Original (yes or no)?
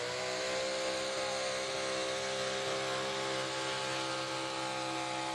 yes